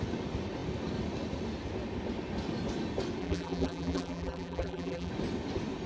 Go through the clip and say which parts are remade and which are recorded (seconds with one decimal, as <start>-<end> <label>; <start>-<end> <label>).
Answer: 0.0-3.2 recorded; 3.2-5.1 remade; 5.1-5.9 recorded